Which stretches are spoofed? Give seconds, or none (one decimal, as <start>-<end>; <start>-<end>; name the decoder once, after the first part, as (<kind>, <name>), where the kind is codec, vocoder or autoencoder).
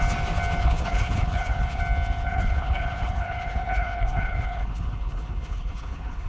0.6-1.8 (codec, HILCodec); 2.3-6.3